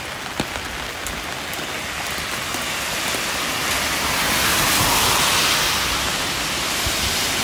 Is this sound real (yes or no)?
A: yes